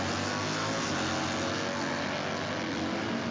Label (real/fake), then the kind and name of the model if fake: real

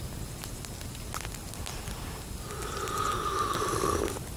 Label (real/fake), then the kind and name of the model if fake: real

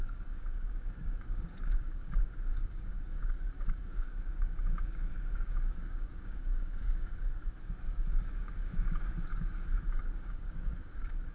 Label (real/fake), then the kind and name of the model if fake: fake, codec, DAC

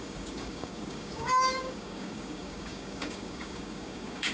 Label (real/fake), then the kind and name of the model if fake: fake, codec, DAC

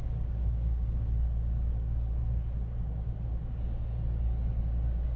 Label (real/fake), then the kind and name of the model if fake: fake, codec, DAC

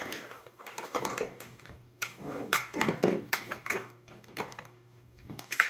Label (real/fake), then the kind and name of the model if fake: fake, codec, DAC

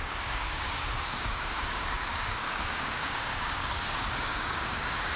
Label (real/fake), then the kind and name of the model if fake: fake, codec, DAC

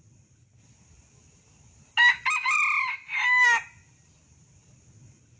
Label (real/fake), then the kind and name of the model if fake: real